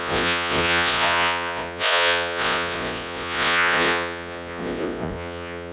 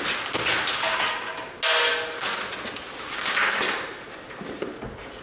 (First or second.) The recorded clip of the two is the second